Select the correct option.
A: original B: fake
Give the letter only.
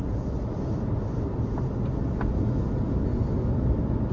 A